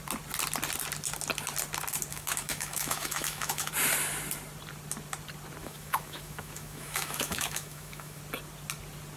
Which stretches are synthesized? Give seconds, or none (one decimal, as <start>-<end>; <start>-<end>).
2.1-3.7; 5.6-8.2